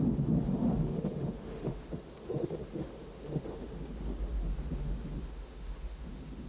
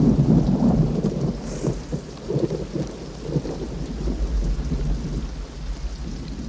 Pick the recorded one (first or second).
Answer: second